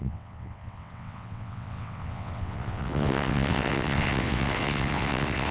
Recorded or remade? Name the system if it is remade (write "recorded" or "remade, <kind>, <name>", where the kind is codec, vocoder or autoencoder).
remade, vocoder, WaveNeXt